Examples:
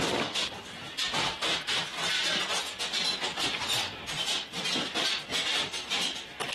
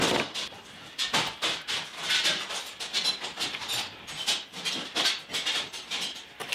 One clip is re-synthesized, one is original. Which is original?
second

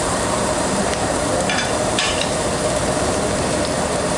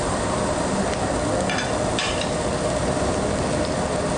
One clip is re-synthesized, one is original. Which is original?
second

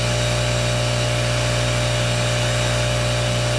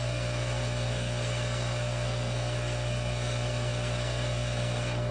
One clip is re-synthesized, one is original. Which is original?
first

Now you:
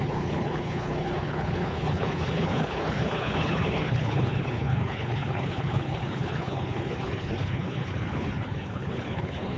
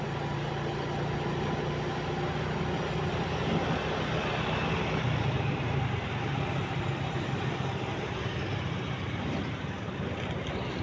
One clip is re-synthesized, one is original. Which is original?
second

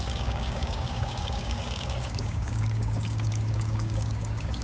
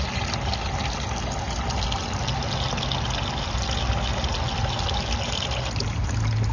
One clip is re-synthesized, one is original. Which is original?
second